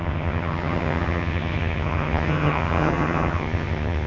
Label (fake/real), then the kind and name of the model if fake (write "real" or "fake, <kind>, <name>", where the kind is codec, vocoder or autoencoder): fake, vocoder, HiFi-GAN